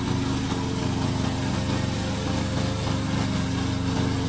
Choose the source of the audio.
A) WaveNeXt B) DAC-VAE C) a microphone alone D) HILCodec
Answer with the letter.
C